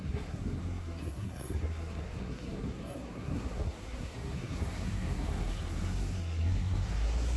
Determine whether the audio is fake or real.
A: fake